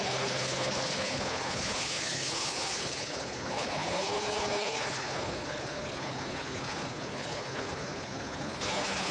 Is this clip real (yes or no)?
no